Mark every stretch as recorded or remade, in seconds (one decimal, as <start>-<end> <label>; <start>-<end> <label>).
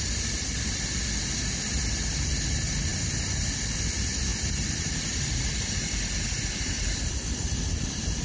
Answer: 0.0-8.2 recorded